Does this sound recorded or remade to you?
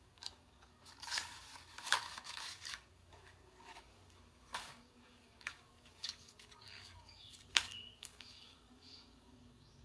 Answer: remade